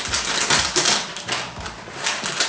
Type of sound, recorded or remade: recorded